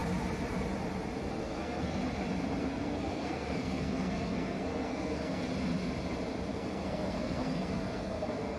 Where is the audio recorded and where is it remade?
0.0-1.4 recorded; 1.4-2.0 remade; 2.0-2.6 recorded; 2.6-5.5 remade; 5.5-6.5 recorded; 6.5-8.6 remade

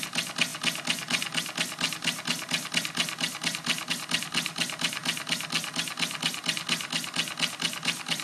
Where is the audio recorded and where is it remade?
0.0-8.2 recorded

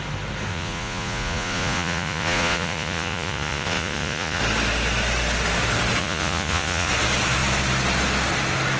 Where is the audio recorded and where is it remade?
0.0-0.5 recorded; 0.5-4.4 remade; 4.4-6.0 recorded; 6.0-6.9 remade; 6.9-8.8 recorded

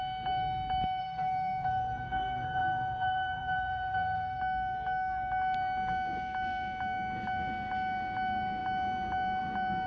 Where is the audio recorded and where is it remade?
0.0-1.0 recorded; 1.0-4.4 remade; 4.4-9.9 recorded

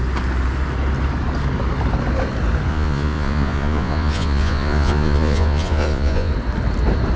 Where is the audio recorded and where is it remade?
0.0-2.7 recorded; 2.7-6.3 remade; 6.3-7.2 recorded

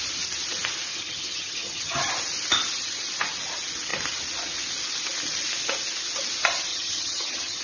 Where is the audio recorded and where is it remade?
0.0-0.9 recorded; 0.9-2.1 remade; 2.1-6.7 recorded; 6.7-7.6 remade